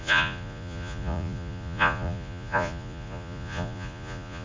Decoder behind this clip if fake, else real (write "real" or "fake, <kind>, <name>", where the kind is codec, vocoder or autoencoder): fake, vocoder, Vocos